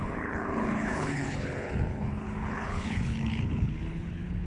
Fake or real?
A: fake